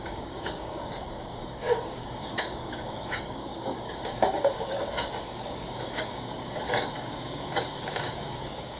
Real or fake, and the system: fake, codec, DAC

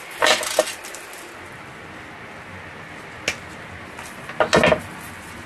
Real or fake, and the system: real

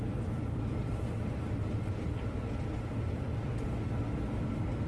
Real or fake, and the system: real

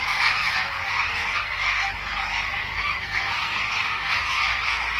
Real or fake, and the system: fake, codec, SNAC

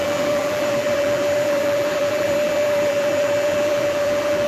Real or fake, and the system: fake, vocoder, BigVGAN v2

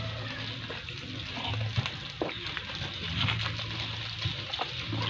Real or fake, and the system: real